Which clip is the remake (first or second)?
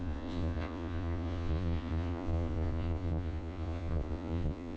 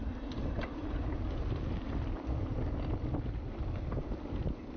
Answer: first